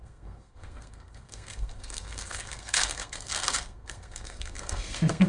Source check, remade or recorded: remade